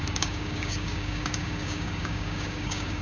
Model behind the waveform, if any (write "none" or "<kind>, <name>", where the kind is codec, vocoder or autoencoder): codec, DAC